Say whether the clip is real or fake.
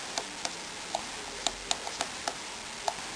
real